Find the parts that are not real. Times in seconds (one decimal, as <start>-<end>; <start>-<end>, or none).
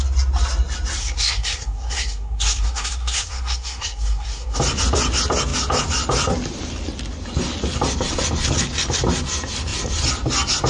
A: 1.0-4.6